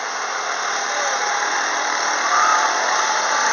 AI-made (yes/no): no